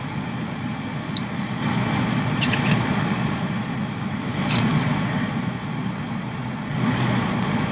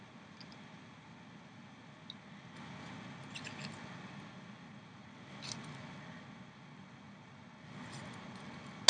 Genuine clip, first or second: second